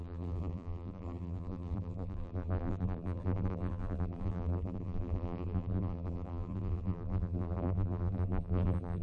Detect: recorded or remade remade